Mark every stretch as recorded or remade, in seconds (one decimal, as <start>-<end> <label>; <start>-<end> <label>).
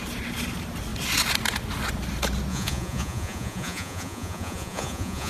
0.0-2.5 recorded; 2.5-5.3 remade